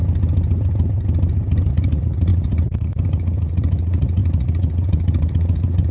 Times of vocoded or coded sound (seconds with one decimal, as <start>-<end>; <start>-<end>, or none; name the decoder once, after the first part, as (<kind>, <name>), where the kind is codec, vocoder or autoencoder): 1.7-5.9 (vocoder, Vocos)